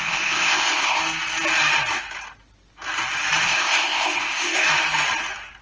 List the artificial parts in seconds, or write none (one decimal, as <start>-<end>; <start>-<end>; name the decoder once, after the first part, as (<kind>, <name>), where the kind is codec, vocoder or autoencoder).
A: 0.0-1.0 (codec, ZipCodec); 3.4-4.7